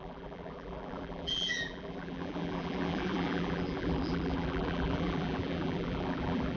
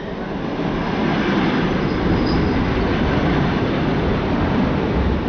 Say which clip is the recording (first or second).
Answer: second